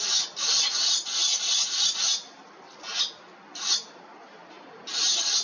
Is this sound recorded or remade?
recorded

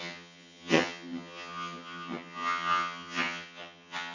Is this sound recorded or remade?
remade